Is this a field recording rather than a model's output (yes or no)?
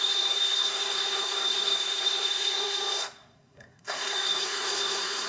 no